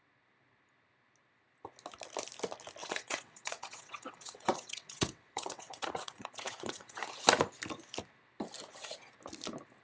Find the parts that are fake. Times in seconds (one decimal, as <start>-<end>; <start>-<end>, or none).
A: 2.8-7.1